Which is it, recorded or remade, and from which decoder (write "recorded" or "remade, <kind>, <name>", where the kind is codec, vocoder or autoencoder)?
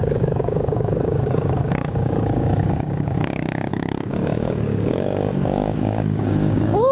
remade, codec, DAC